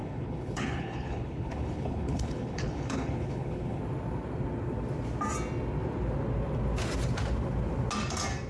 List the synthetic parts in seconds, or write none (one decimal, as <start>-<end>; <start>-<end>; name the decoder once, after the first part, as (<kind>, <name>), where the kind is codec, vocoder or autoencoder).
0.0-3.8 (codec, HILCodec)